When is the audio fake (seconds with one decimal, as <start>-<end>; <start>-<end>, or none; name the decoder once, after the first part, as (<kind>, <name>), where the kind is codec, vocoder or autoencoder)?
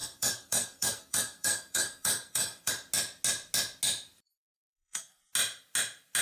0.0-2.7 (codec, SNAC); 4.4-5.2